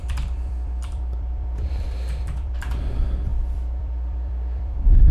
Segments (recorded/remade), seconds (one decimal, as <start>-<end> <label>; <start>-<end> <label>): 0.0-5.1 remade